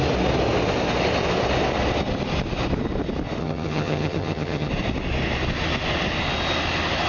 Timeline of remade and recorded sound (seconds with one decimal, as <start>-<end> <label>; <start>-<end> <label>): 0.0-3.4 recorded; 3.4-4.7 remade; 4.7-7.1 recorded

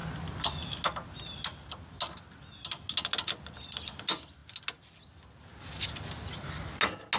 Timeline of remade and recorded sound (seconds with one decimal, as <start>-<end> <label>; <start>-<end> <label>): 0.0-7.2 recorded

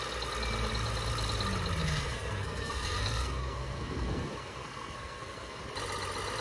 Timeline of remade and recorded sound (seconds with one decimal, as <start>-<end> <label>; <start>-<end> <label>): 0.0-1.8 recorded; 1.8-5.6 remade; 5.6-6.4 recorded

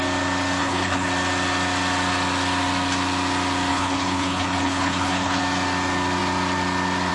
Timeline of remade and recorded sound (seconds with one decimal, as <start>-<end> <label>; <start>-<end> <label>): 0.0-0.6 recorded; 0.6-1.1 remade; 1.1-3.7 recorded; 3.7-5.4 remade; 5.4-7.1 recorded

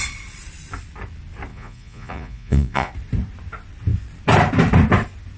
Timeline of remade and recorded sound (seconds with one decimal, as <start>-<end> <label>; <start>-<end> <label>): 0.0-1.5 recorded; 1.5-2.9 remade; 2.9-5.4 recorded

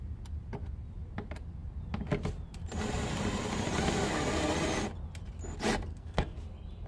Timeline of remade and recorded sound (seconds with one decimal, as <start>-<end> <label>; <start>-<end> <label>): 0.0-5.9 recorded; 5.9-6.4 remade; 6.4-6.9 recorded